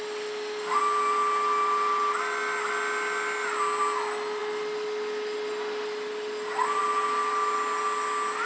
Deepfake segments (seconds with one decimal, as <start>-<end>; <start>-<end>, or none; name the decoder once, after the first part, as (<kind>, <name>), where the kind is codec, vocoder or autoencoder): none